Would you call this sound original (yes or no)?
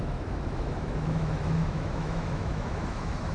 no